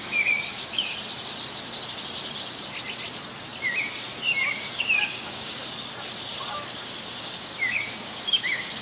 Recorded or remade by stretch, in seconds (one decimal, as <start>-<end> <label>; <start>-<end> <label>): 0.0-0.9 remade; 0.9-4.7 recorded; 4.7-5.6 remade; 5.6-7.2 recorded; 7.2-8.8 remade